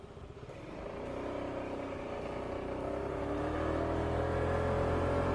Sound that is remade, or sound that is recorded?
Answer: recorded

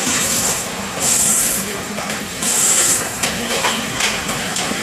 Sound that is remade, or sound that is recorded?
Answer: remade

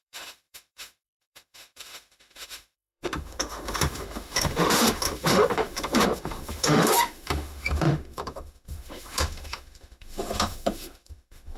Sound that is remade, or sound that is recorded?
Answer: remade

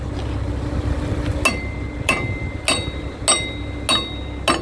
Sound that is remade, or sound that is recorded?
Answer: recorded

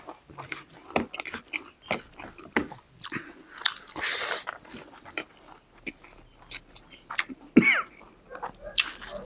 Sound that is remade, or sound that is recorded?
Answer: recorded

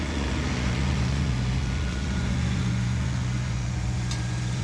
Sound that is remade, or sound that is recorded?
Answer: remade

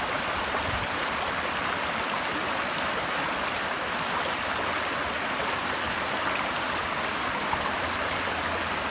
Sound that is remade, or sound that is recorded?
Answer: recorded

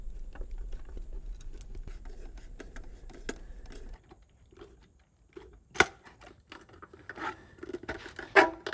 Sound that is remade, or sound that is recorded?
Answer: recorded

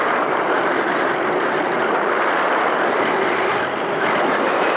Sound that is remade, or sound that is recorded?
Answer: recorded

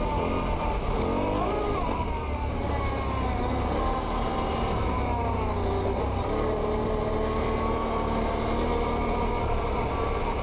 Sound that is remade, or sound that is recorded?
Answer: recorded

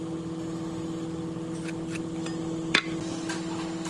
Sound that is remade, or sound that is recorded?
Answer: recorded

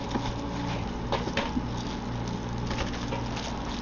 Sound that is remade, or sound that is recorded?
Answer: recorded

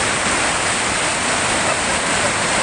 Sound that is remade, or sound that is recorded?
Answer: recorded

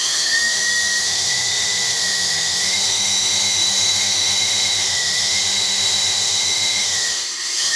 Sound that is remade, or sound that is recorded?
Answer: remade